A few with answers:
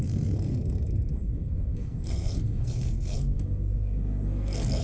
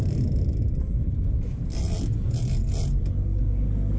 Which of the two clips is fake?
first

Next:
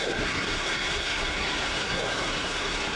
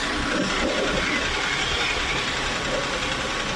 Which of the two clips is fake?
first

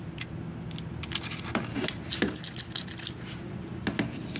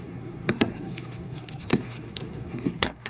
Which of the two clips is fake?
second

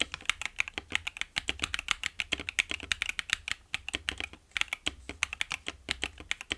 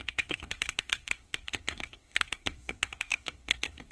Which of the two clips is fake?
second